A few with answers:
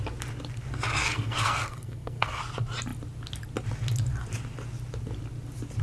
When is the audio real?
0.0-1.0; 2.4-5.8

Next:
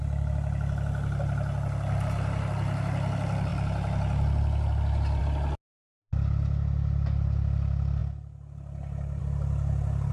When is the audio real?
0.0-10.1

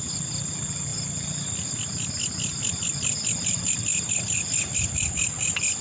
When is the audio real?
0.0-5.8

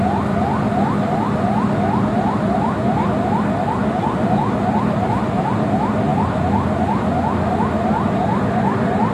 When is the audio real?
0.0-9.1

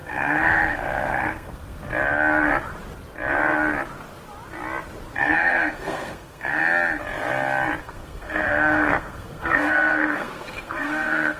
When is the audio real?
1.8-5.2; 6.6-7.8

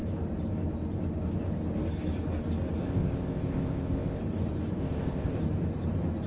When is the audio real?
0.0-2.8; 4.2-4.8; 5.4-6.3

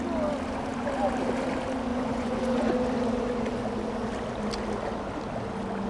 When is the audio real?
0.0-1.9; 2.7-5.9